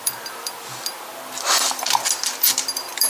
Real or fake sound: fake